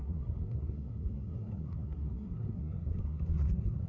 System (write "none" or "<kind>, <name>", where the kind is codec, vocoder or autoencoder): codec, SNAC